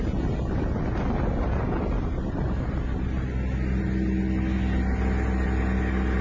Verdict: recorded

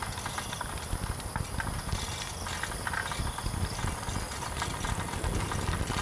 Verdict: recorded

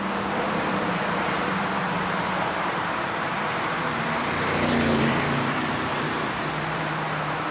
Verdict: remade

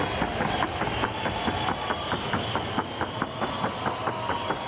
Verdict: recorded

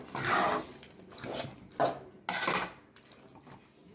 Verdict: recorded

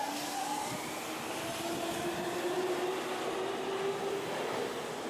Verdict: recorded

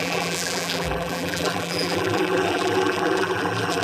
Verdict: remade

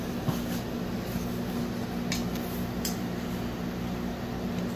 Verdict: recorded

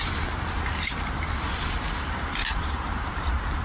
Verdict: remade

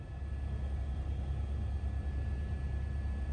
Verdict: recorded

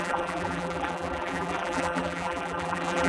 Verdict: remade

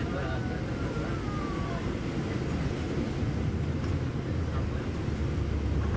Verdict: recorded